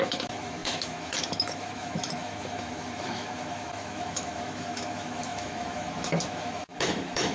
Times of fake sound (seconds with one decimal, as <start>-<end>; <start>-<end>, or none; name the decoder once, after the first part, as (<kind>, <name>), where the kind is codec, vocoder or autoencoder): 0.0-7.3 (autoencoder, DAC-VAE)